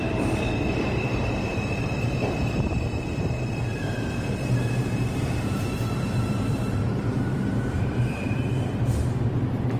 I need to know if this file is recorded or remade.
remade